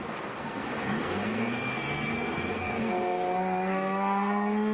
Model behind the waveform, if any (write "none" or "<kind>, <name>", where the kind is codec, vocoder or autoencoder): codec, SNAC